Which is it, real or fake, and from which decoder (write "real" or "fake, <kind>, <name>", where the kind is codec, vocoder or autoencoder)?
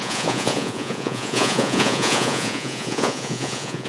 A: fake, vocoder, Vocos